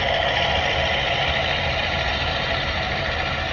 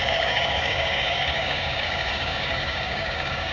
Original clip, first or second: first